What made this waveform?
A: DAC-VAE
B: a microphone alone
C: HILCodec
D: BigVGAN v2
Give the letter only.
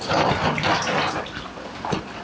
B